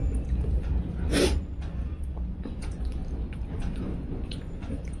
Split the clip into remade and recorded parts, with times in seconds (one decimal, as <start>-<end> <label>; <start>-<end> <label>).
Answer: 0.0-3.0 remade; 3.0-3.5 recorded; 3.5-5.0 remade

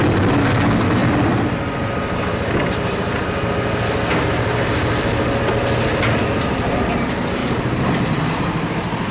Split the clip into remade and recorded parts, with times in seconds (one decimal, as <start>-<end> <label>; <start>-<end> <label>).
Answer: 0.0-7.4 recorded; 7.4-9.1 remade

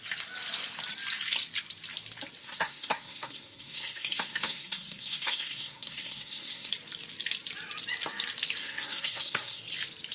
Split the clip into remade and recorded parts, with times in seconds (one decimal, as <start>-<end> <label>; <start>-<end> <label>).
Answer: 0.0-2.4 recorded; 2.4-6.7 remade; 6.7-8.6 recorded; 8.6-9.6 remade; 9.6-10.1 recorded

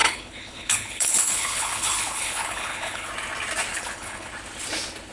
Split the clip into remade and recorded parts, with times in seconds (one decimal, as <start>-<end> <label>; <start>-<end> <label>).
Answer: 0.0-3.1 remade; 3.1-3.7 recorded; 3.7-4.3 remade; 4.3-5.1 recorded

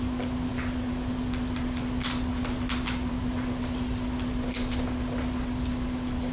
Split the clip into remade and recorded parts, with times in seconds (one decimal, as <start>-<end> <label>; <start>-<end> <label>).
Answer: 0.0-6.3 recorded

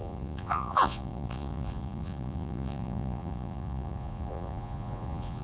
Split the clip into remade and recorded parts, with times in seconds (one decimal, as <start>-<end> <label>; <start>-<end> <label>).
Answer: 0.0-5.4 remade

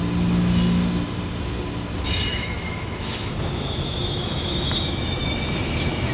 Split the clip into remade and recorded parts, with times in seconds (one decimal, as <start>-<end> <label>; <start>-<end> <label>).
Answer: 0.0-2.3 recorded; 2.3-6.1 remade